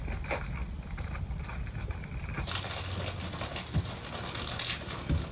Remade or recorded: recorded